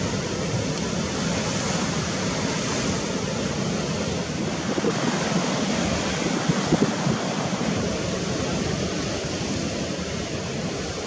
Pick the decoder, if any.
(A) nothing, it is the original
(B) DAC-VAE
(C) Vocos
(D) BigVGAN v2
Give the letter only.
A